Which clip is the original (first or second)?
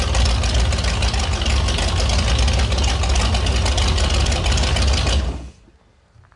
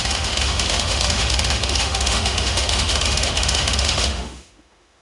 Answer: first